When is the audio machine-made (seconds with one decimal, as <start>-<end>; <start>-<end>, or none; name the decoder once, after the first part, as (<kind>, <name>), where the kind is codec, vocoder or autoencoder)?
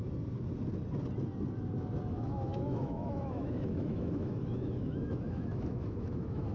2.1-6.5 (autoencoder, DAC-VAE)